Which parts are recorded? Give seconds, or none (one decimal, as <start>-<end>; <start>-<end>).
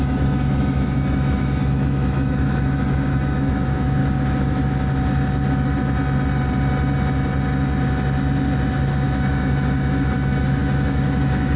4.0-8.9